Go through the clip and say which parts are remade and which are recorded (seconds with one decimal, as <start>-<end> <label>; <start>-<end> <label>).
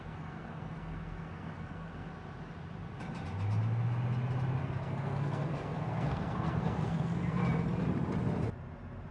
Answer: 0.0-2.1 remade; 2.1-4.6 recorded; 4.6-7.4 remade; 7.4-9.1 recorded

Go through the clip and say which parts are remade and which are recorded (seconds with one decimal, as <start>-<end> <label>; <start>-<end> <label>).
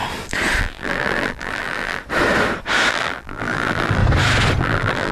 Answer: 0.0-0.6 recorded; 0.6-2.0 remade; 2.0-2.9 recorded; 2.9-4.0 remade; 4.0-4.6 recorded; 4.6-5.1 remade